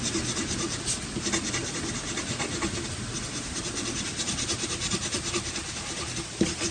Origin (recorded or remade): recorded